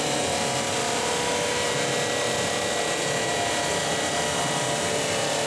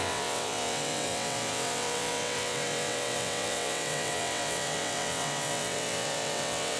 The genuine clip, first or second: first